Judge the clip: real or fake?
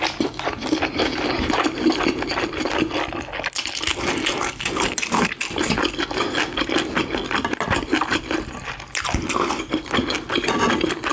real